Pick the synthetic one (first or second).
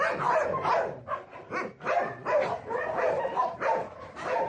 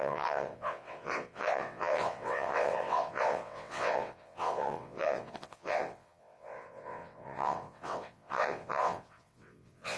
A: second